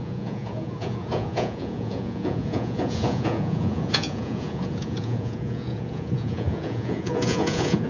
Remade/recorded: remade